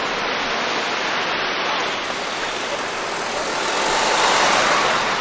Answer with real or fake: real